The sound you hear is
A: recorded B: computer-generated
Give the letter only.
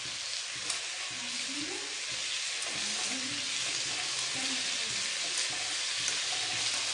A